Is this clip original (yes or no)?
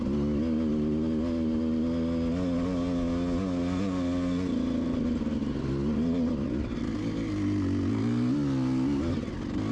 yes